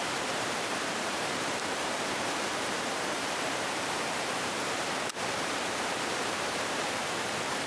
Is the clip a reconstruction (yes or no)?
yes